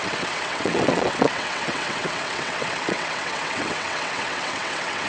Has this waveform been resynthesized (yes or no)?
yes